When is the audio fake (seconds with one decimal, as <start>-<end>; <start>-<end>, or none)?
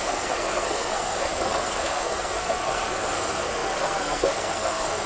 0.0-5.1